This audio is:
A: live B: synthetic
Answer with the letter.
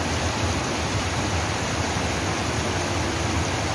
B